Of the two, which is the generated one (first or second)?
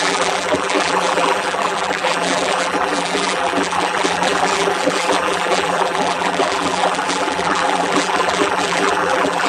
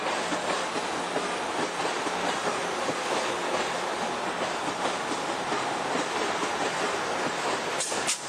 first